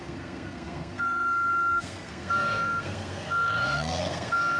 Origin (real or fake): fake